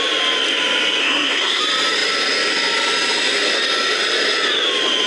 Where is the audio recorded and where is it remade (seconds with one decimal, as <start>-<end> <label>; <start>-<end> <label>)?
0.0-1.0 recorded; 1.0-1.6 remade; 1.6-5.1 recorded